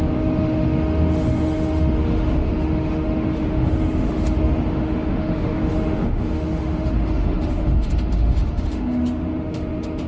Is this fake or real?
fake